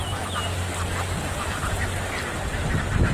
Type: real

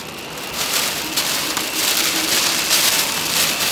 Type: real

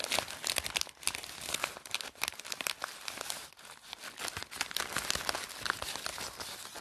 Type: real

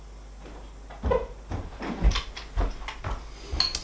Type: real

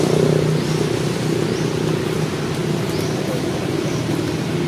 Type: real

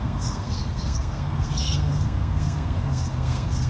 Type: fake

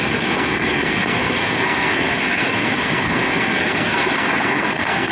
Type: fake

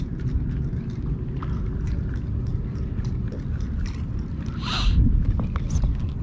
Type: real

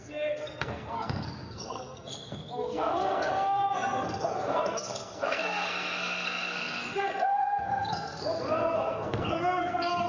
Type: fake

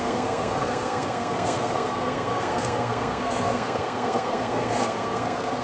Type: fake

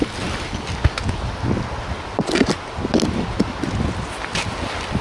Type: real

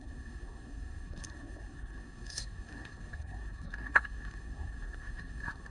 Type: fake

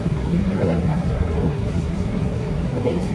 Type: fake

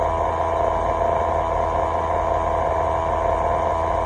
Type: real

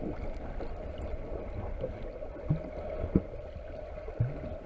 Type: real